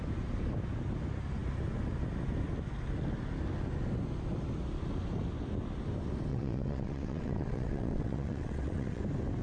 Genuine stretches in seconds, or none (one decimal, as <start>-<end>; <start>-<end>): 0.0-6.3; 9.0-9.4